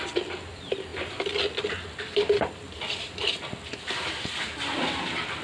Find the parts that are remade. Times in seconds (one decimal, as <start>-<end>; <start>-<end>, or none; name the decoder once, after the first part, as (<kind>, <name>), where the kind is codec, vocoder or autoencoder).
none